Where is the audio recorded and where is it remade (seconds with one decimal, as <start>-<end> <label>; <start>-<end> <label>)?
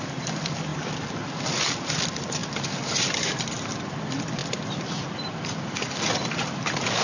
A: 0.0-7.0 recorded